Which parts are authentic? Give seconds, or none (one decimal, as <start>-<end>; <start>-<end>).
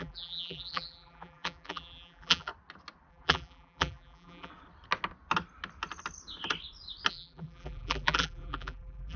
2.5-3.1; 4.5-7.1